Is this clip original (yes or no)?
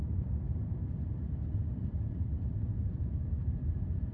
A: yes